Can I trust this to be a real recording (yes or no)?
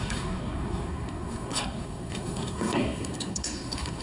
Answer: no